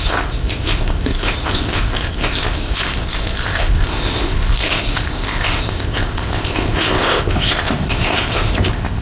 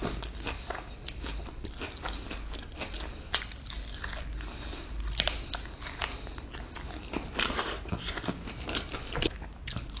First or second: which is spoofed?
first